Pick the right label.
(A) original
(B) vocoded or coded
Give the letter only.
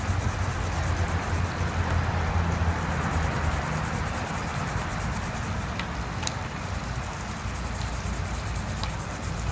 A